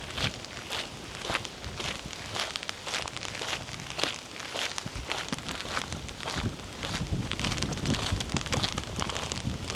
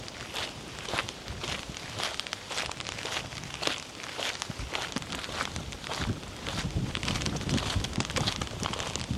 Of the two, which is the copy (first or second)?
second